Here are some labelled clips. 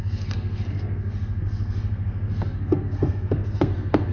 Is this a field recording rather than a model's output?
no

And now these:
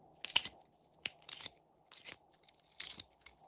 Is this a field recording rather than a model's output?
yes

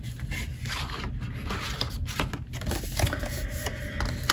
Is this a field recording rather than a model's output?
yes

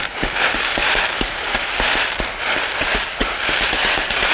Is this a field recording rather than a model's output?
no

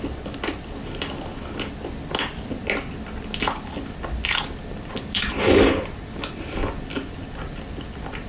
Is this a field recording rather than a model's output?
yes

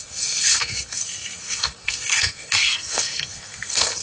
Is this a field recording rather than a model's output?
no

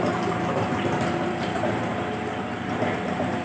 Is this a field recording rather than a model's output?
no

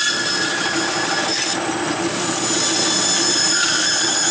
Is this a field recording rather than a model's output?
yes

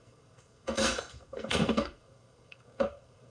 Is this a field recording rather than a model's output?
no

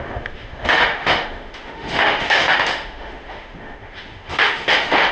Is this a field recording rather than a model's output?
no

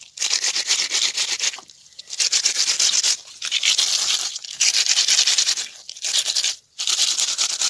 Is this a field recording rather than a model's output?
yes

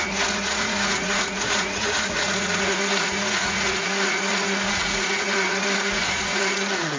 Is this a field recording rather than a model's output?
no